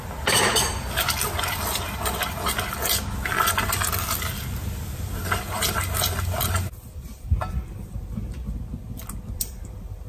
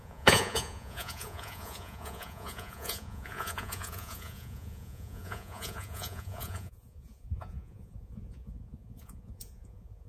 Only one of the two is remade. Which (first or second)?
second